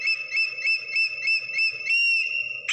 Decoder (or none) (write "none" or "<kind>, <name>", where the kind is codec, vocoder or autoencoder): none